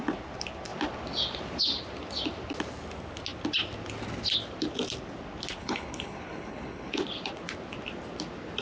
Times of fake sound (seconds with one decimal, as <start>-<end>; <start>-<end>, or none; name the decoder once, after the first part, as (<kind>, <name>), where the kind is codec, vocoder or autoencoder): 5.6-6.9 (codec, HILCodec)